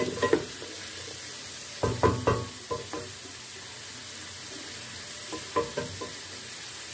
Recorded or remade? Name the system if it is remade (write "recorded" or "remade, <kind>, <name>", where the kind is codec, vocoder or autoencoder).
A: recorded